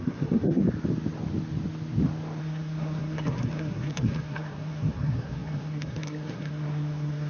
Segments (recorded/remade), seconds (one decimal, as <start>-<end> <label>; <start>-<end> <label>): 0.0-0.6 remade; 0.6-2.4 recorded; 2.4-7.3 remade